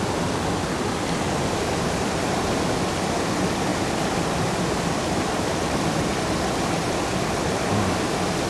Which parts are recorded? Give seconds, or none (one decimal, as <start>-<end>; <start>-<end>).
0.0-8.5